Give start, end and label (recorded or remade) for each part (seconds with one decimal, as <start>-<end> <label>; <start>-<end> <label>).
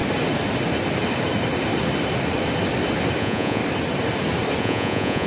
0.0-3.2 recorded; 3.2-3.6 remade; 3.6-4.6 recorded; 4.6-5.3 remade